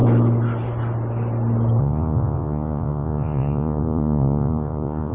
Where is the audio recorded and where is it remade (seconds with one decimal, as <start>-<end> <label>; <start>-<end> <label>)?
0.0-1.8 recorded; 1.8-5.1 remade